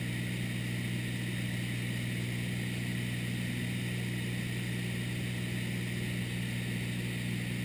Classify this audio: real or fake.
real